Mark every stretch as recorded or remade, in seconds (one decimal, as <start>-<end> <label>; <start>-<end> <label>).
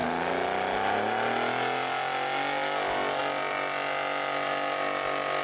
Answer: 0.0-5.4 recorded